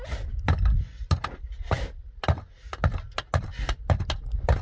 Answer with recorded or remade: recorded